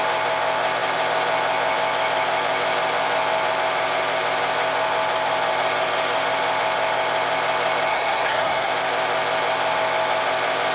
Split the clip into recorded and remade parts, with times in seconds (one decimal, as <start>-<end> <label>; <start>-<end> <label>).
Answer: 0.0-7.9 recorded; 7.9-8.7 remade; 8.7-10.7 recorded